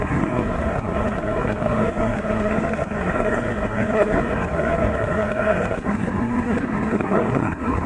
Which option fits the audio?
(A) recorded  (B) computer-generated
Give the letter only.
B